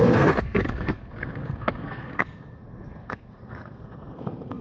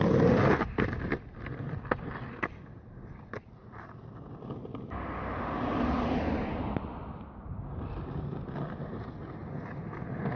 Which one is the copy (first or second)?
first